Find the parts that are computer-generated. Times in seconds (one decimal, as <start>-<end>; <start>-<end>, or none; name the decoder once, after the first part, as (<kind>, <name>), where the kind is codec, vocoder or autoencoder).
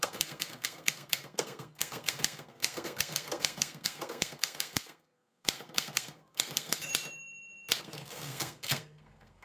0.0-6.9 (codec, SNAC); 7.8-9.4